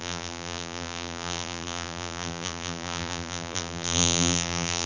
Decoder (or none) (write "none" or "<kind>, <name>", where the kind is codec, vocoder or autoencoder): vocoder, BigVGAN v2